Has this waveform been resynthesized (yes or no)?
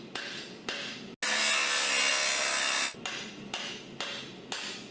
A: no